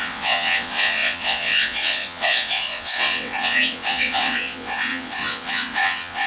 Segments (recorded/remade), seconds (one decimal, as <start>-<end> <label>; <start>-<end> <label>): 0.0-6.3 remade